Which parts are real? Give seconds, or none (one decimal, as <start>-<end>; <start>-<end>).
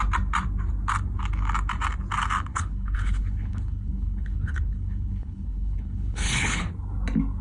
0.0-2.5; 6.7-7.4